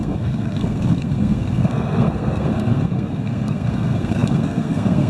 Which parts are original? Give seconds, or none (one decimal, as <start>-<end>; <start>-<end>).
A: none